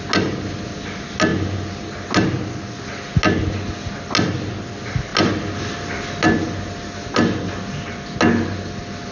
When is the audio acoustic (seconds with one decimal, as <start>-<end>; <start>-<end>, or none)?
0.0-9.1